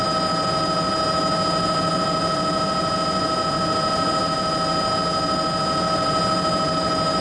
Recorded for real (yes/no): yes